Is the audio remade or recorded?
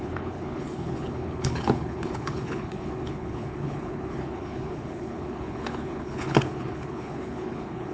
remade